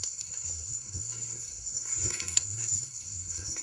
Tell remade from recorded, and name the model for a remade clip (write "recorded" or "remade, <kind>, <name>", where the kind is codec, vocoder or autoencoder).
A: remade, codec, SNAC